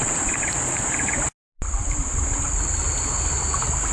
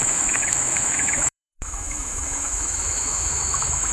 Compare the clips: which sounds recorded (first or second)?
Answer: first